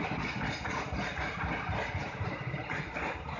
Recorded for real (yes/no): yes